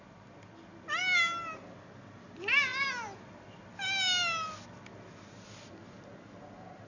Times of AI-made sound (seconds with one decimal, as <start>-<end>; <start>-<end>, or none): none